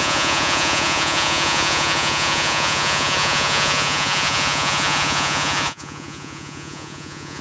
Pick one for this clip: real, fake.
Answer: fake